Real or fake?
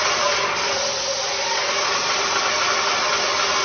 real